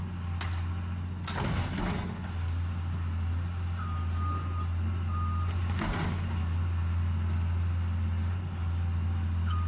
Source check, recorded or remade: recorded